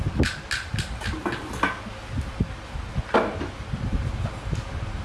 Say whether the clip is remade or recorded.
recorded